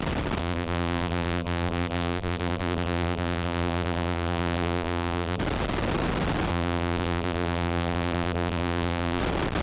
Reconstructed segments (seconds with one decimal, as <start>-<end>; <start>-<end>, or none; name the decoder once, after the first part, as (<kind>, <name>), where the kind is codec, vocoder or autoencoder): 0.4-5.4 (vocoder, BigVGAN v2); 6.5-9.2